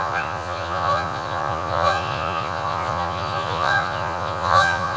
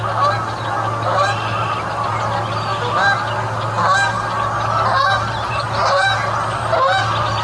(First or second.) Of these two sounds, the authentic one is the second